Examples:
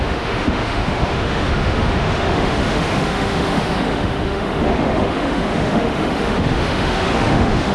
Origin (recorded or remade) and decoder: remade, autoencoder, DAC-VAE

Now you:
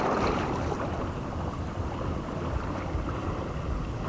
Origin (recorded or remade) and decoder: recorded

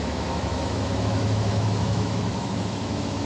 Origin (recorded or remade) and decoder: remade, autoencoder, DAC-VAE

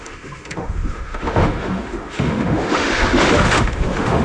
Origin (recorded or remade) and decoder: remade, autoencoder, DAC-VAE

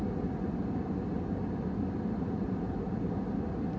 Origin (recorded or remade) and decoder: recorded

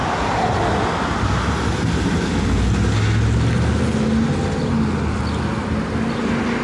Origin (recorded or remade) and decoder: recorded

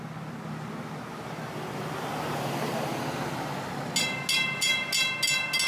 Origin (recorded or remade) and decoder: recorded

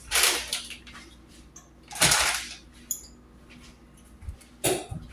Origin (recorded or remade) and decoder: recorded